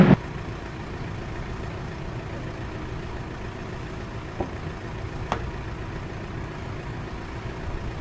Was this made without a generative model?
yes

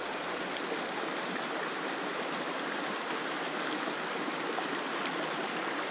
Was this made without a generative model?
yes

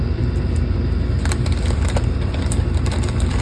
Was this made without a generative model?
no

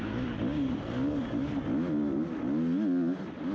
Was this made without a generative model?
yes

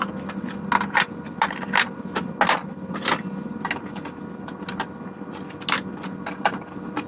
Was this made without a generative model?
yes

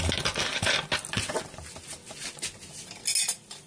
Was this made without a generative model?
yes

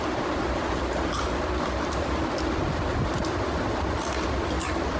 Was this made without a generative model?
no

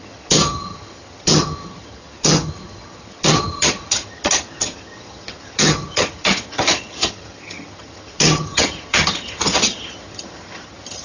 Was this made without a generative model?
no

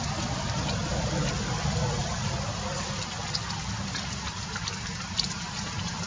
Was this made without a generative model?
yes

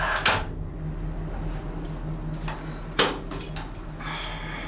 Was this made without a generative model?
yes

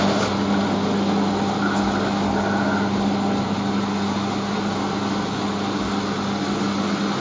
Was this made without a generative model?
yes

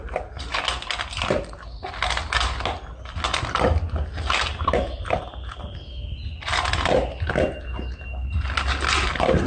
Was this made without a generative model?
yes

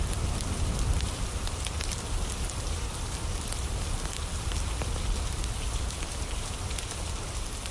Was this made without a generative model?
no